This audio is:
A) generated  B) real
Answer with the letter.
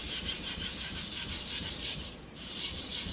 A